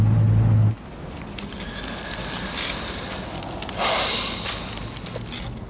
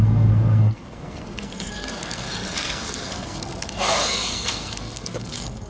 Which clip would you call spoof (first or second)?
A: second